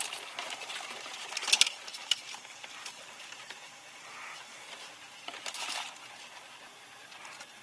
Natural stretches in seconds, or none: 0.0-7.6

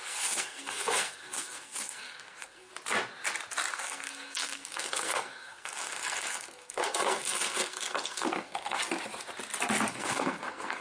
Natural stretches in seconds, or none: 2.7-3.7; 8.8-9.9

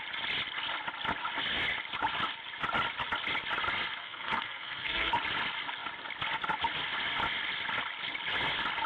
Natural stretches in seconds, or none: 0.0-4.0; 5.1-8.9